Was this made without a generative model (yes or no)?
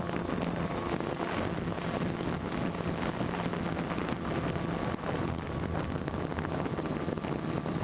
yes